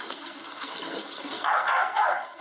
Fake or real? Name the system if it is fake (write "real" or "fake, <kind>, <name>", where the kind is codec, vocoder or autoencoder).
fake, codec, SNAC